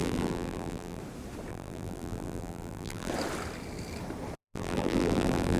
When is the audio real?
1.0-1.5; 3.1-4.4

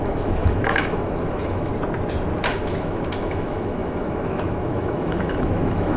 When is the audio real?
1.7-2.5

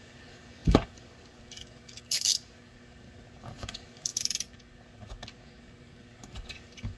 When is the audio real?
none

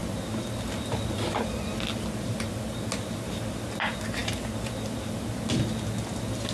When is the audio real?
0.0-6.5

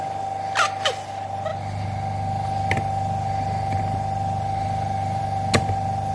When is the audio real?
0.0-1.5; 5.2-6.1

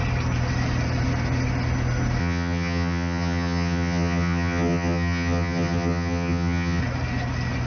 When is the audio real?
0.0-2.2; 6.8-7.7

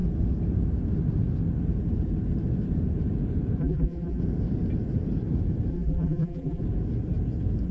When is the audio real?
0.0-3.6; 4.2-5.7; 6.6-7.7